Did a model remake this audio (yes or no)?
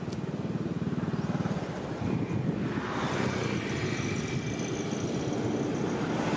no